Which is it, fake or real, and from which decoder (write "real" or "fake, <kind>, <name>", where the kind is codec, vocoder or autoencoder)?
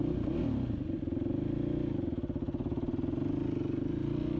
real